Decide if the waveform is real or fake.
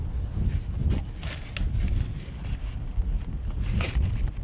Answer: real